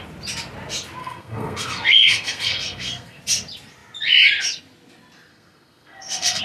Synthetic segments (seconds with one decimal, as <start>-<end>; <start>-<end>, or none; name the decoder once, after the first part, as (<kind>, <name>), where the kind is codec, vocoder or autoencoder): 1.0-3.2 (codec, SNAC); 5.3-6.4